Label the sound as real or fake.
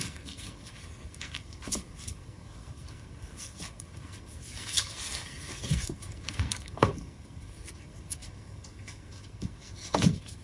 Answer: fake